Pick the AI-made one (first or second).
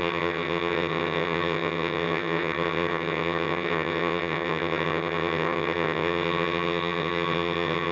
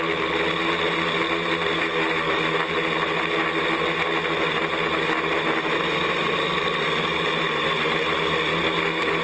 first